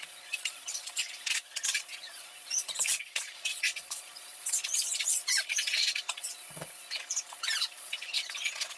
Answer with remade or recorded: remade